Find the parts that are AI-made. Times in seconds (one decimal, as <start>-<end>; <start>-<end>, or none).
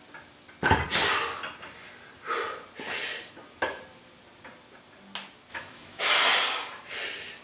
5.5-6.0